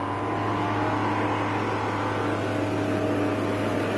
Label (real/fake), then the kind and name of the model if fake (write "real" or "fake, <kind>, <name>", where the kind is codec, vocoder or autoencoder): real